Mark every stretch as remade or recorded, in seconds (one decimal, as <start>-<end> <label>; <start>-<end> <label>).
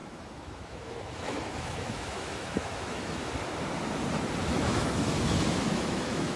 0.0-3.3 remade; 3.3-4.4 recorded; 4.4-6.4 remade